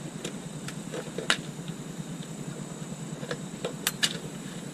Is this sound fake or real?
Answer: real